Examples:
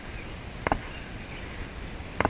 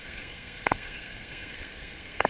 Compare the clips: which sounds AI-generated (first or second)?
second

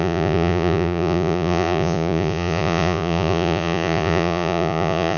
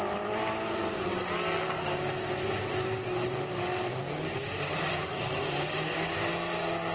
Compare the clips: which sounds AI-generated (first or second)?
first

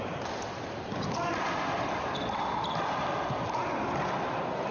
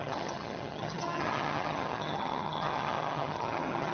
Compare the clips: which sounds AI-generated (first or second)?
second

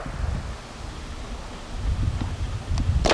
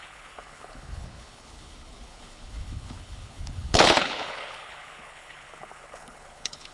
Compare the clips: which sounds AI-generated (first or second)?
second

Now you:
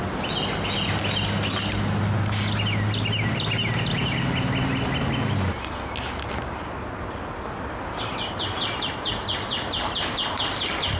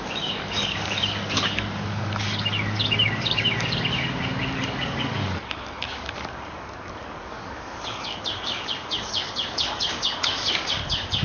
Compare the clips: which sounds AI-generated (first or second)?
second